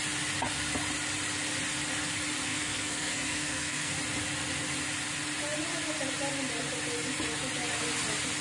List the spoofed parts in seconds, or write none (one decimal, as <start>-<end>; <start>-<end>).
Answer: 2.5-3.9